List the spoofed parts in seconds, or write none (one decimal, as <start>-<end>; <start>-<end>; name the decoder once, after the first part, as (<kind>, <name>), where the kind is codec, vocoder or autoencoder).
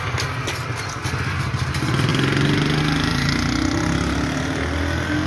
none